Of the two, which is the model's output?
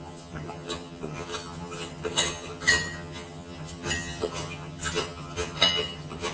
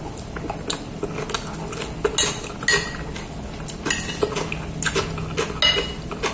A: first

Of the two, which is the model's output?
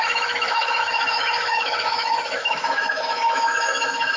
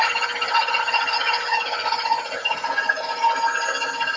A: first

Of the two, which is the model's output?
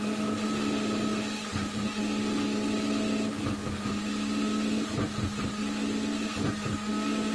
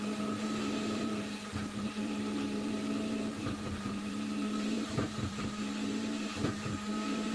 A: second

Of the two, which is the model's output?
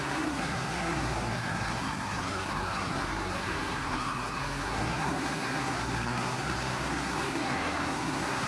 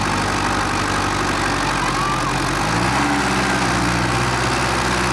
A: first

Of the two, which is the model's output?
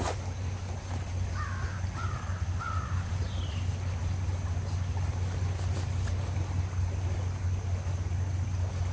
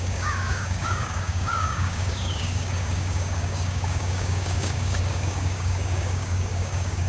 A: second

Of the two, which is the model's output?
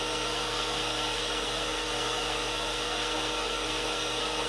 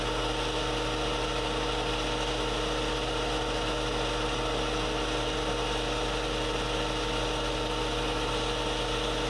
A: first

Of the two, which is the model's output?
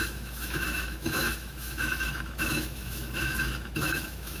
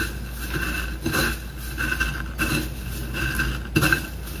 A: first